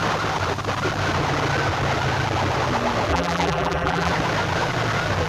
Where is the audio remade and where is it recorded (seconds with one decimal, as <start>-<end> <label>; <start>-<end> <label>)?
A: 0.0-3.1 recorded; 3.1-4.1 remade; 4.1-5.3 recorded